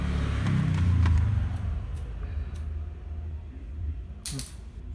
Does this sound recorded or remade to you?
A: recorded